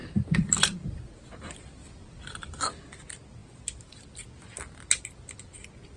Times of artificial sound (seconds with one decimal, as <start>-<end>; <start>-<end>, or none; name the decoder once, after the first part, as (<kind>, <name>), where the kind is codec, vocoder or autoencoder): 0.0-1.0 (vocoder, BigVGAN v2); 1.8-2.6